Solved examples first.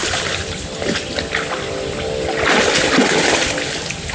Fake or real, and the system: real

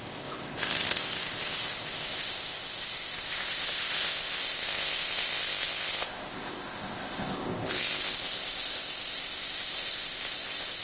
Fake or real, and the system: fake, codec, ZipCodec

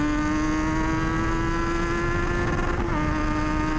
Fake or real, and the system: real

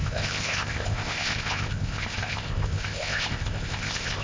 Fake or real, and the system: fake, codec, ZipCodec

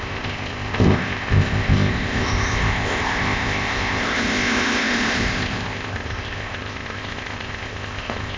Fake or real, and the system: fake, codec, ZipCodec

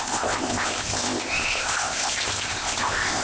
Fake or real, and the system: fake, codec, ZipCodec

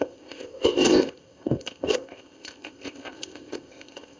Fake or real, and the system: fake, codec, ZipCodec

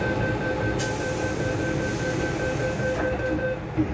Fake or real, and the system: real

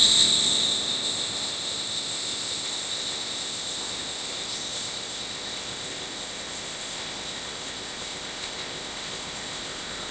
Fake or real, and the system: fake, codec, ZipCodec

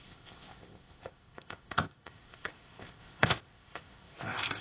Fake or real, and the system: fake, codec, ZipCodec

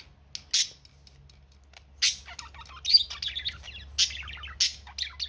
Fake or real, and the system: real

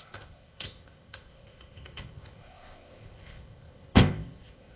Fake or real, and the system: fake, codec, ZipCodec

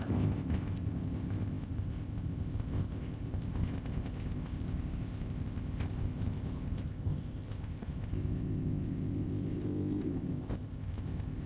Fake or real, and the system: fake, codec, ZipCodec